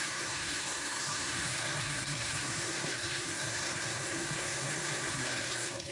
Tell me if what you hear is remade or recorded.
remade